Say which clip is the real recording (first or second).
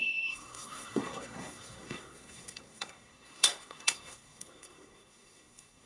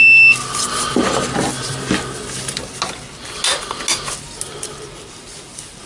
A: second